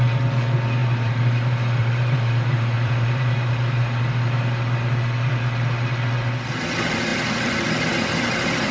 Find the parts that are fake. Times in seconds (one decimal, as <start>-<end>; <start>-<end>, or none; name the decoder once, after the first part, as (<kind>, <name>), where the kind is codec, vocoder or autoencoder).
0.8-3.5 (vocoder, BigVGAN v2)